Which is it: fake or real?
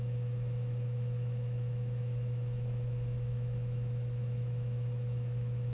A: fake